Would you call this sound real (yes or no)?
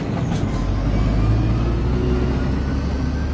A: yes